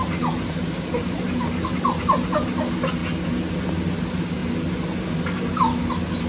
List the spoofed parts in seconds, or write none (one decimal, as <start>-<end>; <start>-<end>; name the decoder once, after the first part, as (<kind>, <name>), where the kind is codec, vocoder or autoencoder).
none